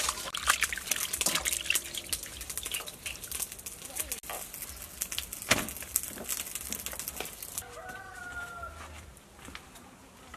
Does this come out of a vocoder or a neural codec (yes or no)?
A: no